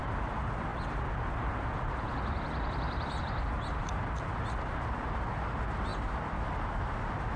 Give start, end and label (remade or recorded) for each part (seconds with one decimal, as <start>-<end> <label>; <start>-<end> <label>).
0.0-7.4 recorded